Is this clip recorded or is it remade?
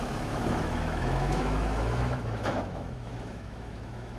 remade